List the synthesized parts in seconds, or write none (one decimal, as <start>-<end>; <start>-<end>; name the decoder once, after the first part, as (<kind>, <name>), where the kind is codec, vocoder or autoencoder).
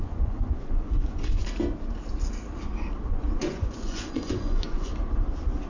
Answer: 0.0-1.4 (vocoder, Vocos); 3.1-4.9